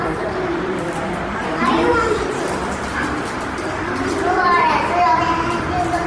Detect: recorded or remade remade